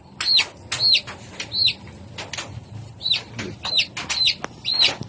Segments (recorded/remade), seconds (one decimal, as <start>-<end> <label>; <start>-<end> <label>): 0.0-2.6 recorded; 2.6-3.3 remade; 3.3-5.1 recorded